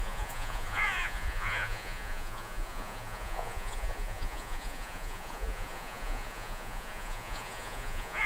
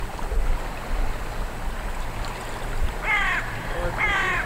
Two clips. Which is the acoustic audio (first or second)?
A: second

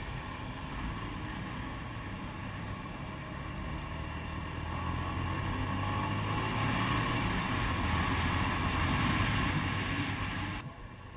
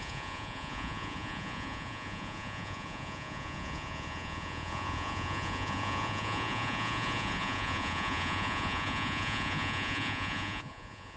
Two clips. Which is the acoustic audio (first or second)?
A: first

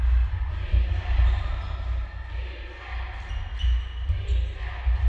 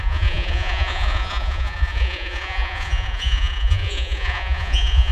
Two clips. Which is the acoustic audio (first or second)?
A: first